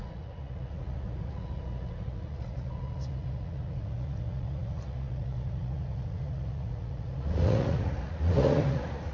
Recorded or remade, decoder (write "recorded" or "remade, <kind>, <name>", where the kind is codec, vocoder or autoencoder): remade, vocoder, Vocos